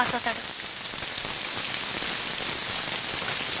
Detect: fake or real real